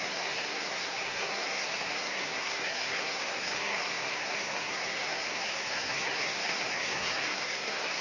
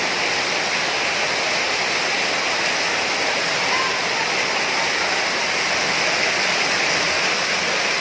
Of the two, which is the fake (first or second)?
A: first